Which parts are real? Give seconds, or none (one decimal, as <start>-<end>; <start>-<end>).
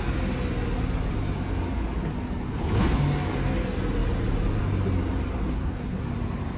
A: 0.0-2.5; 3.0-5.5; 6.0-6.6